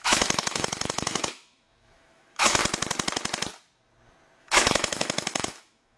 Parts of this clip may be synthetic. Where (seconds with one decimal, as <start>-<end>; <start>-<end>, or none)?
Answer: 0.0-2.6; 4.4-6.0